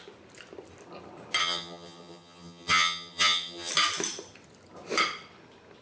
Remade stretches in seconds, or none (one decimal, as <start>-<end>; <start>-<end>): 1.4-3.7